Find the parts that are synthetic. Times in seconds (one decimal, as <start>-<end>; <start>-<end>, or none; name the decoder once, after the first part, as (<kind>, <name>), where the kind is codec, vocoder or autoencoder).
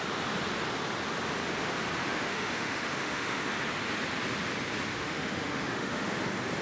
2.0-3.5 (autoencoder, DAC-VAE); 4.9-6.1